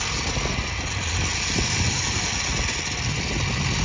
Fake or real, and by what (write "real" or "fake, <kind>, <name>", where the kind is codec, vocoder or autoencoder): real